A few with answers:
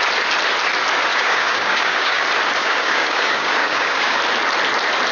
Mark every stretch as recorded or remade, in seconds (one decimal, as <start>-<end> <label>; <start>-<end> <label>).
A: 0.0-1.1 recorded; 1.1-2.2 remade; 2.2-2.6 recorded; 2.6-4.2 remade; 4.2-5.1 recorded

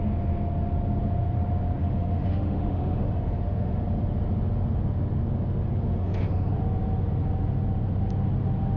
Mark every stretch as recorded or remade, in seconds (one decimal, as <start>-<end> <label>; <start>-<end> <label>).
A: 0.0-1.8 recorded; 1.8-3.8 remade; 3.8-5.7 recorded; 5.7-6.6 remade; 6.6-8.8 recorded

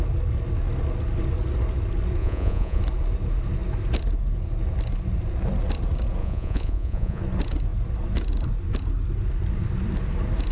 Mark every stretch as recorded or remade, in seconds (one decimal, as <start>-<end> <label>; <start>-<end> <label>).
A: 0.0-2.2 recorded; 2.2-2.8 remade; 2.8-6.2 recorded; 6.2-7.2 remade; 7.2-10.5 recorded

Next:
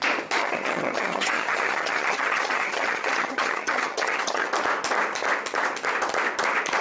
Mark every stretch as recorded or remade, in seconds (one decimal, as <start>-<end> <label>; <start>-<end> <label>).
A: 0.0-0.4 recorded; 0.4-4.5 remade; 4.5-6.8 recorded

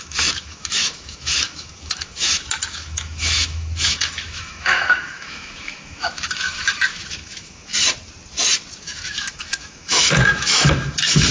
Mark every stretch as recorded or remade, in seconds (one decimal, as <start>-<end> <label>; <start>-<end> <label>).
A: 0.0-7.7 remade; 7.7-8.8 recorded; 8.8-11.3 remade

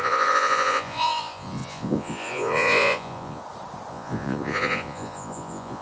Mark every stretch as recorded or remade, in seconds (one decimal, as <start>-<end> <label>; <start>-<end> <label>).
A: 0.0-3.4 remade; 3.4-3.9 recorded; 3.9-5.8 remade

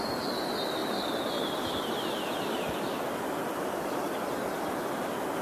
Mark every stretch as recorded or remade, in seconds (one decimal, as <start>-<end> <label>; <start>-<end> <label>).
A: 0.0-0.8 recorded; 0.8-4.0 remade; 4.0-5.4 recorded